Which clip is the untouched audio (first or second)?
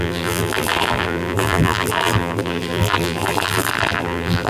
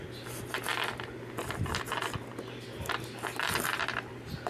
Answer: second